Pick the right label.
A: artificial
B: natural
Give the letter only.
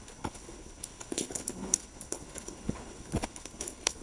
A